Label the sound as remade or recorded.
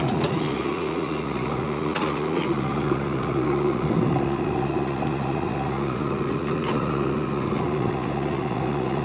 remade